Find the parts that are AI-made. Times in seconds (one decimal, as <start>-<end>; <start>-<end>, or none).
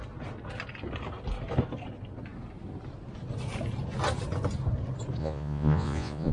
5.2-6.3